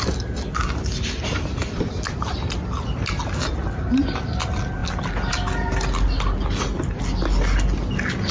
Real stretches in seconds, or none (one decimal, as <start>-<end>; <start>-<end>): 0.0-8.3